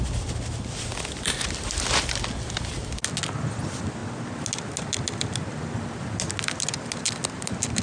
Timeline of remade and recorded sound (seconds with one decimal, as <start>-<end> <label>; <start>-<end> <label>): 0.0-7.8 recorded